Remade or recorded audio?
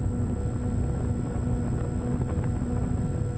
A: recorded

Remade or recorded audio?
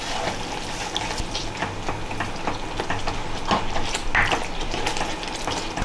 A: recorded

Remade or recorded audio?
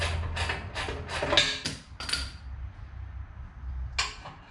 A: recorded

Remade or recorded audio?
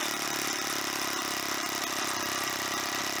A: recorded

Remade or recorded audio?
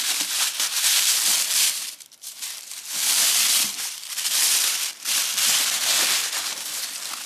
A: remade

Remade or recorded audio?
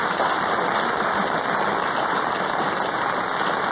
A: recorded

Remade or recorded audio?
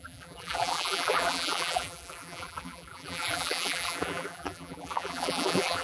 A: remade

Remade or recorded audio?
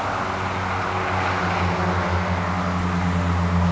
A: recorded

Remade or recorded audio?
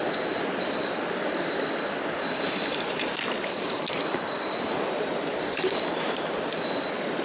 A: remade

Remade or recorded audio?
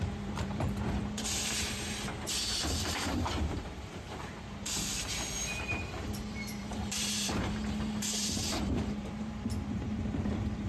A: remade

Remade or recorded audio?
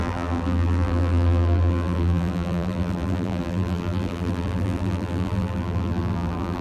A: remade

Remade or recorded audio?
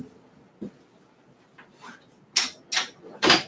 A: recorded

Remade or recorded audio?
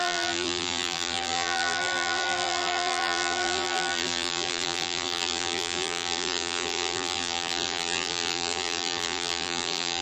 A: remade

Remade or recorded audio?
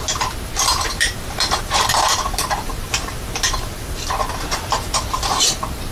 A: remade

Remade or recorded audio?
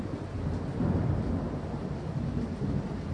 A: recorded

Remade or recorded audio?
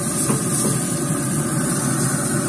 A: recorded